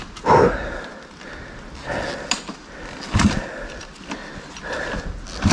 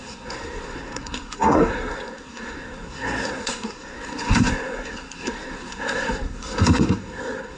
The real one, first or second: first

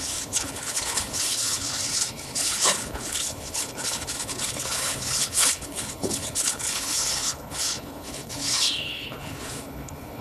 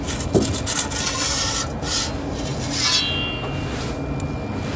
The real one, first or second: second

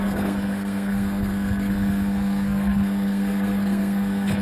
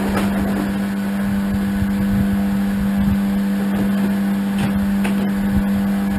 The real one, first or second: second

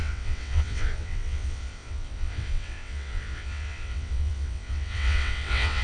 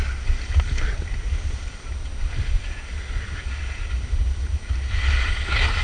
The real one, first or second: second